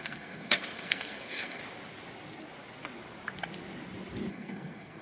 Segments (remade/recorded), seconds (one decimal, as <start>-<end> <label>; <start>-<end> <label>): 0.0-1.6 remade; 1.6-4.3 recorded; 4.3-5.0 remade